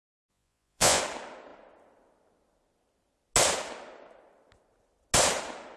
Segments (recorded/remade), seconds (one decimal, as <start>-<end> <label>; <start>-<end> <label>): 0.0-1.0 remade; 1.0-5.8 recorded